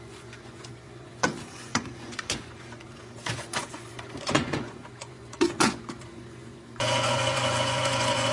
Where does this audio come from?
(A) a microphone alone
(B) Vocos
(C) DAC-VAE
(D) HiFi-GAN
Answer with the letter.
B